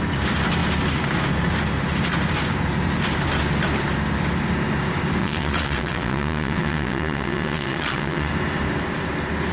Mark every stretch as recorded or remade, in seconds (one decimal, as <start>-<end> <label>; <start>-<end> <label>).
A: 0.0-5.2 recorded; 5.2-8.3 remade; 8.3-9.5 recorded